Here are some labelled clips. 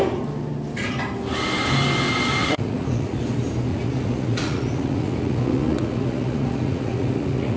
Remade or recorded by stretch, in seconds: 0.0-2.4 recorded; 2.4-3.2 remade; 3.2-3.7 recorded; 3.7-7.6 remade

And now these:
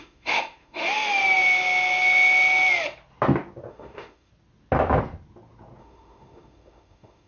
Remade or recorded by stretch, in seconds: 0.0-1.2 remade; 1.2-3.7 recorded; 3.7-4.3 remade; 4.3-5.8 recorded; 5.8-7.3 remade

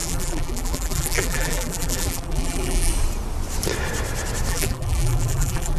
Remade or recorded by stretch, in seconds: 0.0-2.9 remade; 2.9-4.5 recorded; 4.5-5.8 remade

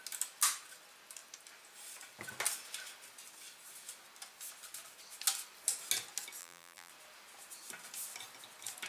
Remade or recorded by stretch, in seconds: 0.0-6.4 recorded; 6.4-6.9 remade; 6.9-8.9 recorded